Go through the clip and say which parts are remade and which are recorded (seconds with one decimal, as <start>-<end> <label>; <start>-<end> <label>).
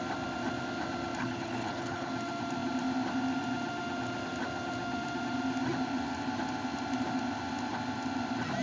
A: 0.0-1.2 recorded; 1.2-2.1 remade; 2.1-8.6 recorded